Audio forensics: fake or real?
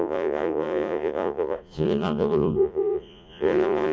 fake